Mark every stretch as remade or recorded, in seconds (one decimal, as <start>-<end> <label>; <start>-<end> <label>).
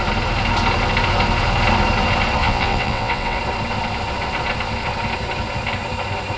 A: 0.0-2.4 recorded; 2.4-3.4 remade; 3.4-6.4 recorded